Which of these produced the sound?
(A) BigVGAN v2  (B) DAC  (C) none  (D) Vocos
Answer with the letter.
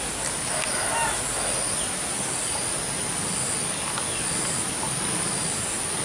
C